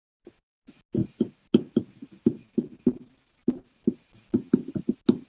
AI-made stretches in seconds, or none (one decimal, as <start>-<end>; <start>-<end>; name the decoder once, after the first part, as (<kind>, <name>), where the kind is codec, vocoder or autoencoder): none